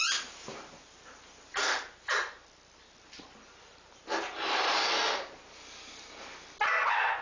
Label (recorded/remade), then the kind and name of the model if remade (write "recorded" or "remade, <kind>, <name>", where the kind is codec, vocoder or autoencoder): recorded